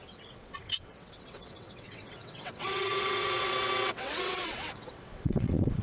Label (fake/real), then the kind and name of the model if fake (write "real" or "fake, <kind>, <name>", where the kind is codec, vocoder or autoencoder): fake, vocoder, WaveNeXt